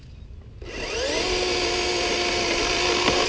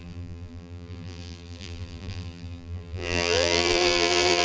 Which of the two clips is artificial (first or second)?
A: second